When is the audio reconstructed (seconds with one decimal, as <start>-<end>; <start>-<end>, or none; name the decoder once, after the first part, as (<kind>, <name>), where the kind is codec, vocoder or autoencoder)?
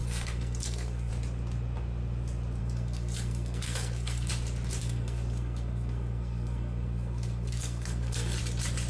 0.0-1.1 (codec, SNAC); 2.6-4.3; 4.8-8.4